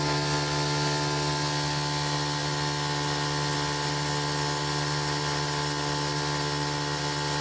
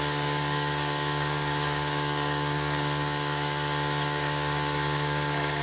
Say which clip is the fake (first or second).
second